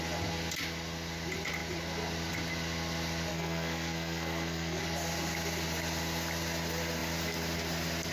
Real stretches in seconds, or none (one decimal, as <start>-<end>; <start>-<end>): 0.0-3.3; 4.8-8.1